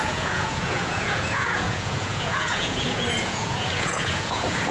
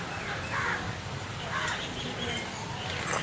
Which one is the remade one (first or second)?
first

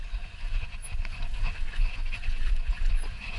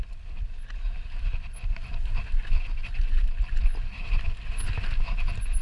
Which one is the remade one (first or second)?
first